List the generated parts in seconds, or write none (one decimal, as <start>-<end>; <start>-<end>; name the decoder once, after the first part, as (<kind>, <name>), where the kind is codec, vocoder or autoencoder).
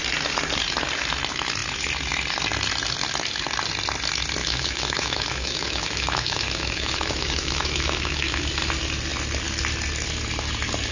4.4-8.4 (autoencoder, DAC-VAE)